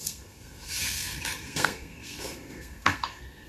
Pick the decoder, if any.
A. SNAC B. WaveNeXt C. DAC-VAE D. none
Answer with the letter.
A